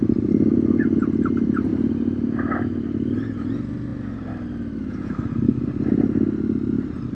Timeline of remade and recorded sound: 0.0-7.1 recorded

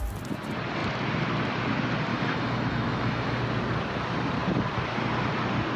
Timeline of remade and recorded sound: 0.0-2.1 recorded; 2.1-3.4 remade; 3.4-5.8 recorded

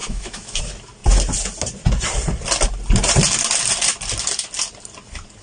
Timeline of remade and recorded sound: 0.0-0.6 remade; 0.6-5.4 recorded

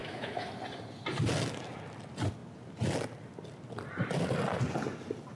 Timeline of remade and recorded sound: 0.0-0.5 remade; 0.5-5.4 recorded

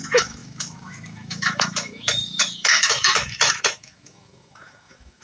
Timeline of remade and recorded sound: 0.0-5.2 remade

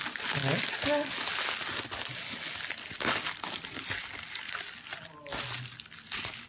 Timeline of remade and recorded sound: 0.0-6.5 recorded

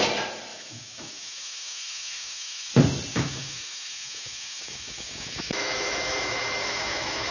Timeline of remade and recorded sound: 0.0-0.5 recorded; 0.5-2.7 remade; 2.7-3.1 recorded; 3.1-7.3 remade

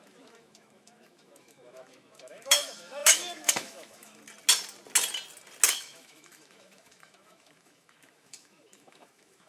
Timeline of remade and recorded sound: 0.0-4.2 remade; 4.2-5.7 recorded; 5.7-9.5 remade